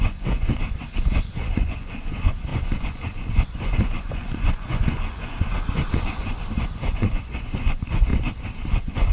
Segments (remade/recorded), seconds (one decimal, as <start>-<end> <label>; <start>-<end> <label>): 0.0-8.1 remade; 8.1-8.7 recorded; 8.7-9.1 remade